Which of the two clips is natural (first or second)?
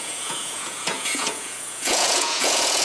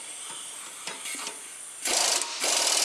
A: second